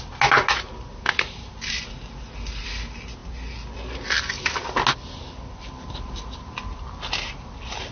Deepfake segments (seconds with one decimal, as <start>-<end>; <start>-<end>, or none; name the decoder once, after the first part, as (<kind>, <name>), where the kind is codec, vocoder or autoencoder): none